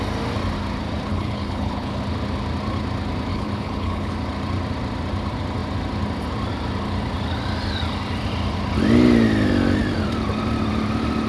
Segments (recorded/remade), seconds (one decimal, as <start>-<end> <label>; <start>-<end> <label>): 0.0-1.1 recorded; 1.1-2.0 remade; 2.0-3.3 recorded; 3.3-4.1 remade; 4.1-11.3 recorded